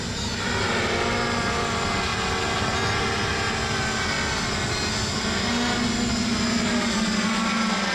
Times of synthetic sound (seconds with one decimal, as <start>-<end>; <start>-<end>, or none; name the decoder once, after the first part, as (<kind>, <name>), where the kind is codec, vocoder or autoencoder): none